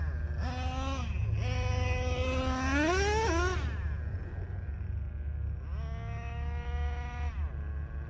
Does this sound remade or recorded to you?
recorded